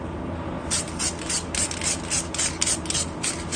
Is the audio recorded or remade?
recorded